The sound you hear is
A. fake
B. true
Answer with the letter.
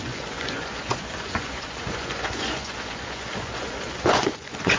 A